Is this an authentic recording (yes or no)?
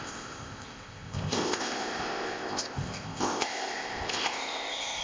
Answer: no